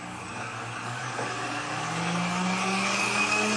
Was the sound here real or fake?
fake